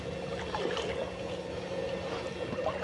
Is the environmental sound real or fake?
real